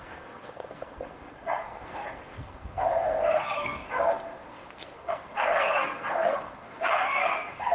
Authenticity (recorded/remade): remade